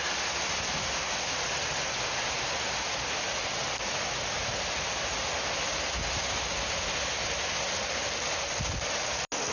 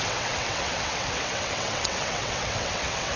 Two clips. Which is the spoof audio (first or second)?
second